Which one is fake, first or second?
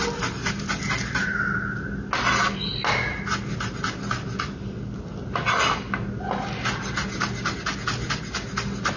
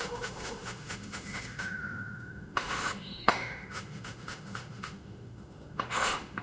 second